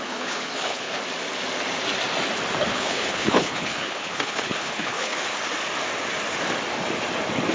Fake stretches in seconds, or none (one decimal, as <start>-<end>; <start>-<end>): 0.0-1.0; 2.7-5.3